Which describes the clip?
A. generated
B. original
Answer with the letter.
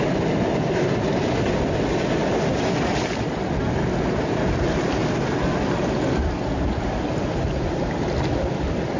B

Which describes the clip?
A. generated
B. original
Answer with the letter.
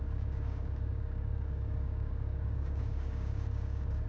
A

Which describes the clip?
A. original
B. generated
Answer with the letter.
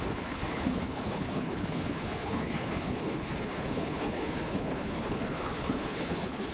B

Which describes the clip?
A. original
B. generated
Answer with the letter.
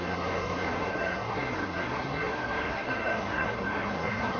B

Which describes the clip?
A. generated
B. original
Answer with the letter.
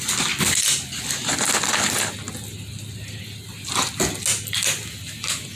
B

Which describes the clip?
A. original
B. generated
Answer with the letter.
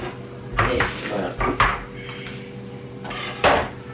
A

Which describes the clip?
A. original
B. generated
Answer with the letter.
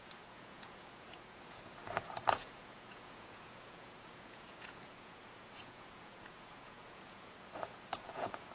B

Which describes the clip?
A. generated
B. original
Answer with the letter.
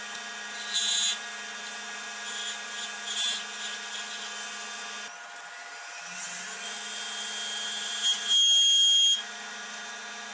B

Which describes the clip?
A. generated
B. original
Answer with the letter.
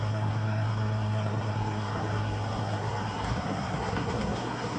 A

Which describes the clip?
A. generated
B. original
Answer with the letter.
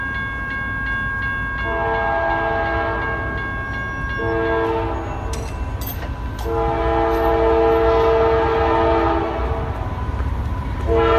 B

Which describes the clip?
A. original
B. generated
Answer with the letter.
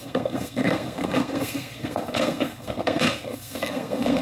B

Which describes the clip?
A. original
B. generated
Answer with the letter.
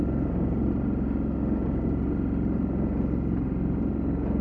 A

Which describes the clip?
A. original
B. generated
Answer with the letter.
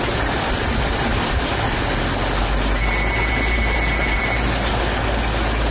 A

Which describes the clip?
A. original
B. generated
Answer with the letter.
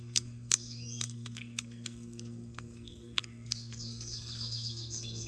B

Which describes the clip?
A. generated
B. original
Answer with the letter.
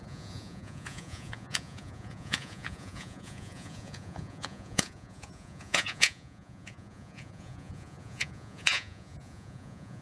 A